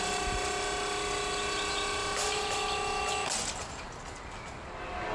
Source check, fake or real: real